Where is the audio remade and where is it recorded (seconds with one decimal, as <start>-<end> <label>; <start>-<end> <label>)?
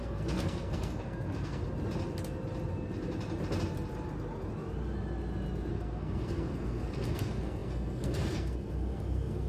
0.0-1.6 remade; 1.6-5.7 recorded; 5.7-9.5 remade